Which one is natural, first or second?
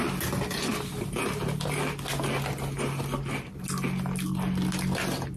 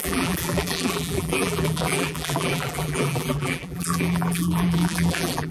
first